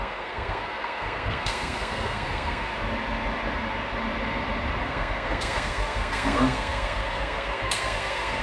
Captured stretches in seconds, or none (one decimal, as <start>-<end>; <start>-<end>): 2.7-4.8